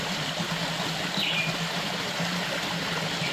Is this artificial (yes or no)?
no